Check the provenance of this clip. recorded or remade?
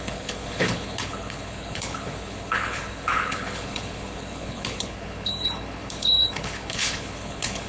remade